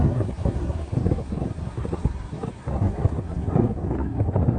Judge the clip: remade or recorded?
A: remade